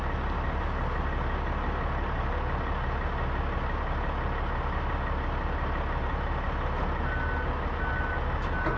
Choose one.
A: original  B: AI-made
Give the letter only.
A